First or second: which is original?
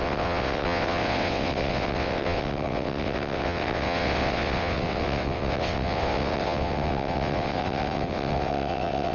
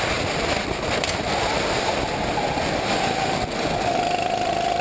second